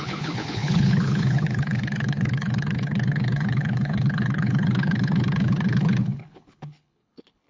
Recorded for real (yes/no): no